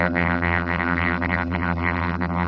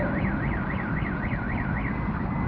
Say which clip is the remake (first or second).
first